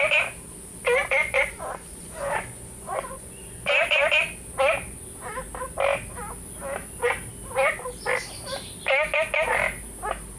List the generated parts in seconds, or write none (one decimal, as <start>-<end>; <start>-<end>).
1.2-3.7